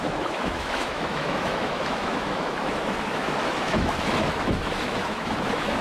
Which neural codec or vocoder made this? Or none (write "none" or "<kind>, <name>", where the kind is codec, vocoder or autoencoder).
autoencoder, DAC-VAE